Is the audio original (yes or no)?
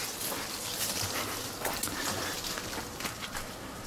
yes